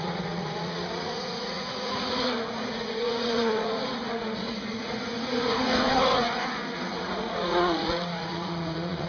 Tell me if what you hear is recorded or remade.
remade